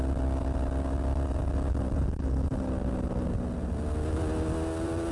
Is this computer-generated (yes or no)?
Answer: no